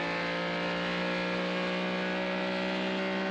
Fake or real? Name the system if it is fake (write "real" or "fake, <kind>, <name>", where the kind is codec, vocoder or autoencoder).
real